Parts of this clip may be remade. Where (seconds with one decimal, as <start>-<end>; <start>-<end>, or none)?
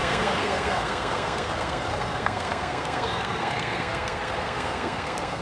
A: 0.0-5.4